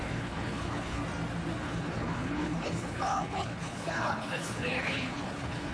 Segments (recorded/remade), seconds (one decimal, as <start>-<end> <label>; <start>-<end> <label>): 0.0-1.0 remade; 1.0-1.6 recorded; 1.6-5.7 remade

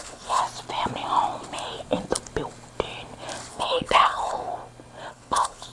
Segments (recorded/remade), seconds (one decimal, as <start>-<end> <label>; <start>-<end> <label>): 0.0-0.4 remade; 0.4-3.5 recorded; 3.5-4.5 remade; 4.5-5.1 recorded; 5.1-5.7 remade

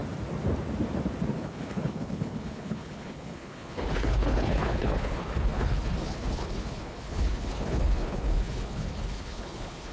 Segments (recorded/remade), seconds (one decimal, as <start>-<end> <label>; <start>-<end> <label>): 0.0-1.3 recorded; 1.3-9.9 remade

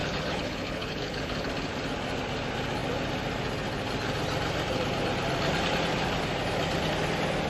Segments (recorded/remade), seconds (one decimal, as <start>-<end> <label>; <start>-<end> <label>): 0.0-1.5 remade; 1.5-7.5 recorded

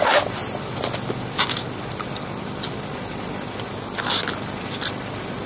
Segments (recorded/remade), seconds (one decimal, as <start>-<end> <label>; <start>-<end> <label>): 0.0-5.5 recorded